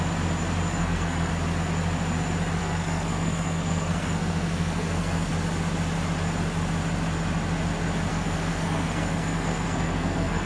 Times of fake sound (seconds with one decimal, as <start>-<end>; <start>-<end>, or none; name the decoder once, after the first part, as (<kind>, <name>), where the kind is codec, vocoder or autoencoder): 0.8-1.3 (codec, SNAC); 2.6-5.3; 8.1-10.5